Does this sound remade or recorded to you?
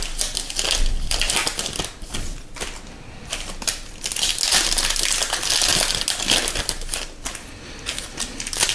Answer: recorded